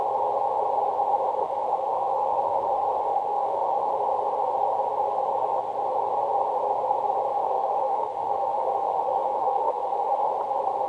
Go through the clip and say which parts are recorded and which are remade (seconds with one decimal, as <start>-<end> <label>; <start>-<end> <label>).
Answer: 0.0-1.4 recorded; 1.4-2.7 remade; 2.7-3.1 recorded; 3.1-4.0 remade; 4.0-7.3 recorded; 7.3-10.3 remade; 10.3-10.9 recorded